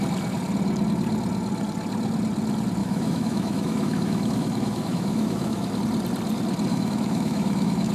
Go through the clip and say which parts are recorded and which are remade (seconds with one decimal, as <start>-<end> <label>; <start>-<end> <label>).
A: 0.0-2.8 recorded; 2.8-5.8 remade; 5.8-6.7 recorded; 6.7-7.9 remade